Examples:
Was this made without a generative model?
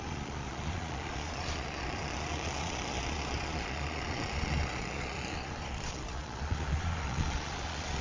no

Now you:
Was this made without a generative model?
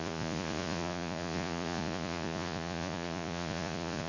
no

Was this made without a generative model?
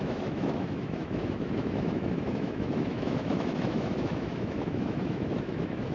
no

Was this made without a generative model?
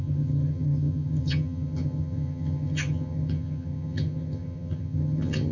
no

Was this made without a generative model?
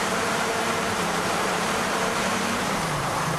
no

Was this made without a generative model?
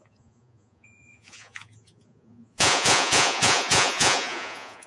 no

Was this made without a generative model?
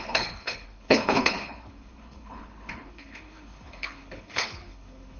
no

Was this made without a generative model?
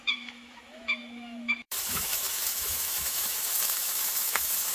no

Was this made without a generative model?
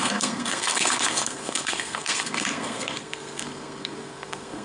no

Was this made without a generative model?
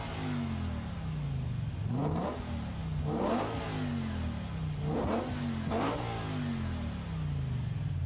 yes